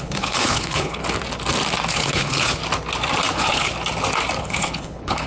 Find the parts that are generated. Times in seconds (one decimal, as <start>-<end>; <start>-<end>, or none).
0.0-1.0; 1.9-2.6; 3.3-3.7; 4.4-5.3